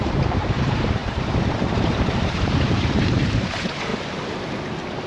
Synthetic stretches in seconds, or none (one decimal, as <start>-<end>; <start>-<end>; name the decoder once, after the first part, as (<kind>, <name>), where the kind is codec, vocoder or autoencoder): 0.0-3.9 (vocoder, BigVGAN v2)